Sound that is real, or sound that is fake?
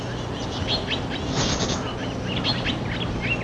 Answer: real